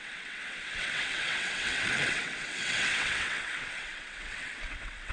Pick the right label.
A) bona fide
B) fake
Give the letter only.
B